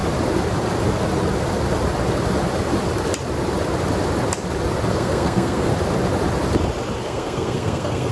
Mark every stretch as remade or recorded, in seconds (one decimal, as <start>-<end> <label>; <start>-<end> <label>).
0.0-4.9 recorded; 4.9-5.7 remade; 5.7-7.0 recorded; 7.0-8.1 remade